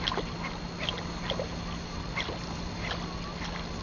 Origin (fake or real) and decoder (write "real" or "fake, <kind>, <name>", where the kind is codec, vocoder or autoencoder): real